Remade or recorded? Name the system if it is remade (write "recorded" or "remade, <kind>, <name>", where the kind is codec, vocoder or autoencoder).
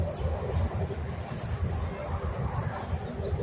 recorded